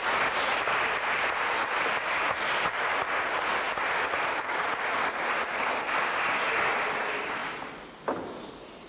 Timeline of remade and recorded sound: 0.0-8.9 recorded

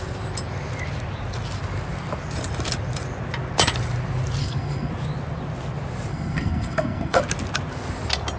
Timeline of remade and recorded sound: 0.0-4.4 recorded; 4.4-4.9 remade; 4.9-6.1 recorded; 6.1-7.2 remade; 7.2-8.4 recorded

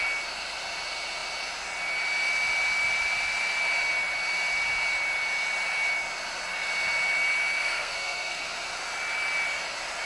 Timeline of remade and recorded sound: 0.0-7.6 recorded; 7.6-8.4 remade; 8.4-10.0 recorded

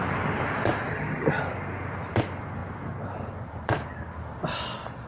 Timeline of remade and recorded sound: 0.0-0.9 recorded; 0.9-1.4 remade; 1.4-5.1 recorded

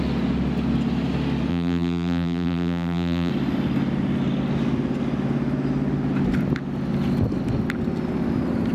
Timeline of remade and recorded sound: 0.0-1.5 recorded; 1.5-3.3 remade; 3.3-8.7 recorded